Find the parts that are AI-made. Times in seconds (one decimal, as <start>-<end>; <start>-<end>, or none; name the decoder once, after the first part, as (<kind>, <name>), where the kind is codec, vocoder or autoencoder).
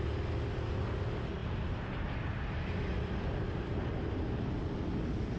none